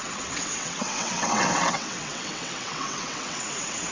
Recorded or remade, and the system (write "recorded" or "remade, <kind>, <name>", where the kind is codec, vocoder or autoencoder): remade, vocoder, WaveNeXt